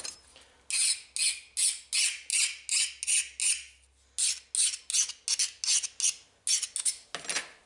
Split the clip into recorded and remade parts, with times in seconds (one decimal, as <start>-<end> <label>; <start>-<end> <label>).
0.0-7.7 recorded

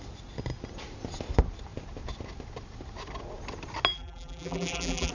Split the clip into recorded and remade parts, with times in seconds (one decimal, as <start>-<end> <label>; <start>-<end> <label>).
0.0-3.9 recorded; 3.9-5.1 remade

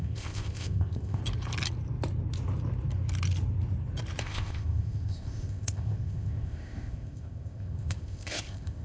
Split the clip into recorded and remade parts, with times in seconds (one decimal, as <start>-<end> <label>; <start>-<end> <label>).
0.0-1.2 remade; 1.2-4.2 recorded; 4.2-8.8 remade

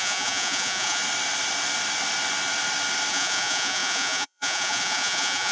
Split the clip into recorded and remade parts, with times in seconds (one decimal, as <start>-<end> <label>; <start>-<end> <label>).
0.0-1.0 remade; 1.0-3.1 recorded; 3.1-5.5 remade

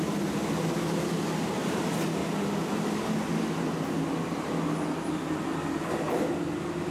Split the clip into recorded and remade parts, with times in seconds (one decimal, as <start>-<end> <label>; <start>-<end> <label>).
0.0-6.9 recorded

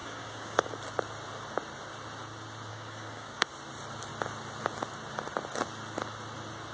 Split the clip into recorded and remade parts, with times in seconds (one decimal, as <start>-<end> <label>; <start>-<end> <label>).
0.0-0.7 remade; 0.7-2.7 recorded; 2.7-3.5 remade; 3.5-6.7 recorded

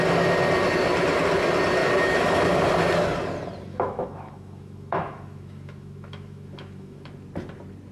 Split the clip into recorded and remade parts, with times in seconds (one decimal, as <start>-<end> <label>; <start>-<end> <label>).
0.0-1.8 recorded; 1.8-2.5 remade; 2.5-3.7 recorded; 3.7-7.1 remade; 7.1-7.9 recorded